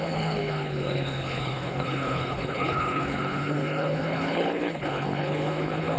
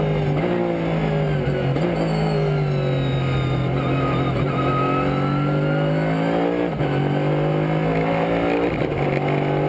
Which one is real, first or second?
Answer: second